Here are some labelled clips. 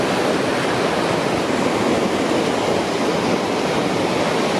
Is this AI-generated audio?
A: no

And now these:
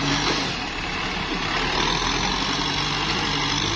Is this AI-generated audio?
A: no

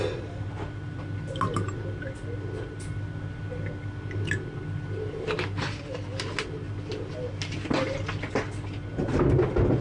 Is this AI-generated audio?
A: no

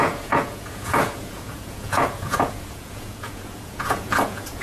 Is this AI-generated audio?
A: yes